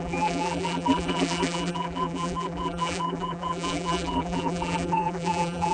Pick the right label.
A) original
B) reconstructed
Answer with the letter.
B